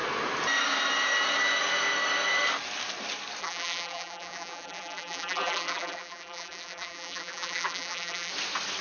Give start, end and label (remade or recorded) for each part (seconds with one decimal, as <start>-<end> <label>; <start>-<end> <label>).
0.0-3.4 recorded; 3.4-8.3 remade; 8.3-8.8 recorded